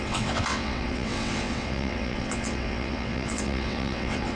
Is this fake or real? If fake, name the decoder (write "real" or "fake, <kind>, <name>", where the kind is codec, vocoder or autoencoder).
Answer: fake, vocoder, WaveNeXt